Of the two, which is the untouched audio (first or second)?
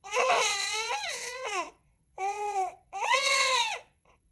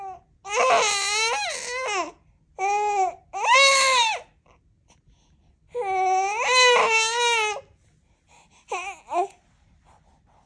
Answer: second